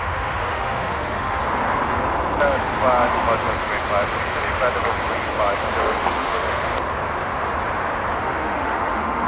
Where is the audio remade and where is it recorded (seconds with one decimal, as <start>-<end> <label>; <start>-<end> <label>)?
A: 0.0-1.4 remade; 1.4-5.8 recorded; 5.8-6.7 remade; 6.7-8.2 recorded; 8.2-9.3 remade